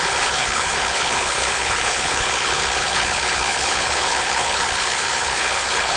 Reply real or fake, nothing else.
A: fake